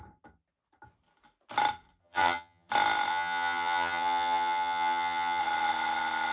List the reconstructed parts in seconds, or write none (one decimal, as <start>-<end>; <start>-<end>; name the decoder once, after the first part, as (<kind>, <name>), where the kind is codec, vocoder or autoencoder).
2.0-2.7 (vocoder, HiFi-GAN); 3.1-5.4